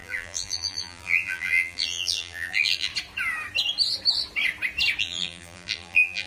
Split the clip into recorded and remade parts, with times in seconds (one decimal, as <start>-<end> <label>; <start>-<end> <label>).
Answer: 0.0-2.9 remade; 2.9-5.0 recorded; 5.0-6.3 remade